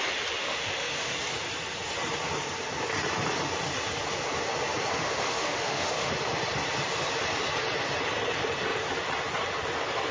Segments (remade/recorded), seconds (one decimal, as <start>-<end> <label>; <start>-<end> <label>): 0.0-0.4 recorded; 0.4-1.1 remade; 1.1-5.0 recorded; 5.0-6.1 remade; 6.1-10.1 recorded